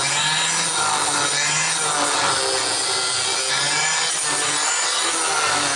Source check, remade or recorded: recorded